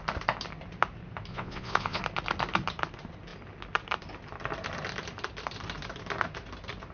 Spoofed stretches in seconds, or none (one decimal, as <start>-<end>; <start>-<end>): 1.3-2.0